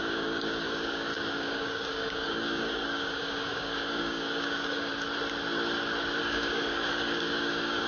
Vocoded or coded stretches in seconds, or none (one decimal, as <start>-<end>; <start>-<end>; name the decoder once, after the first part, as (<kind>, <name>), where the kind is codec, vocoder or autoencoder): 0.0-4.9 (codec, DAC); 6.2-7.9